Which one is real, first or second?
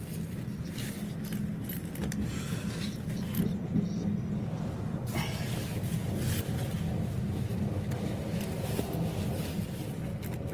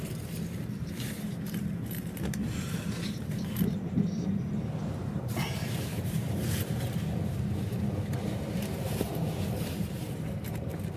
first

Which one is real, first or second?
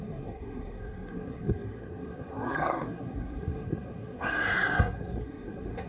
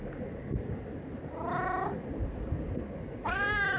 second